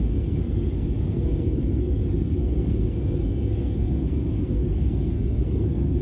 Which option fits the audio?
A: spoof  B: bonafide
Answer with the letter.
A